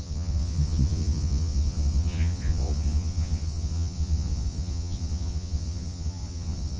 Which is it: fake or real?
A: fake